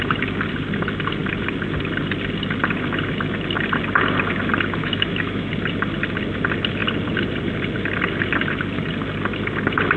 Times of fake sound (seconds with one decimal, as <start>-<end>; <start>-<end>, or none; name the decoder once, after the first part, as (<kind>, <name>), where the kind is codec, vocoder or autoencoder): 4.8-5.5 (autoencoder, DAC-VAE)